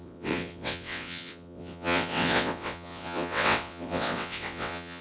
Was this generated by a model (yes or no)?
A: yes